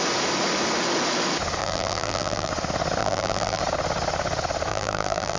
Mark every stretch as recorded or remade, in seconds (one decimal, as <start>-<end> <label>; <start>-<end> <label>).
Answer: 0.0-1.6 recorded; 1.6-2.5 remade; 2.5-3.0 recorded; 3.0-3.6 remade; 3.6-4.7 recorded; 4.7-5.4 remade